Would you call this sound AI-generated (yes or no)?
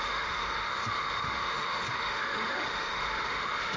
yes